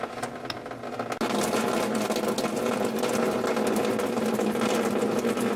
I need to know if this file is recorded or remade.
recorded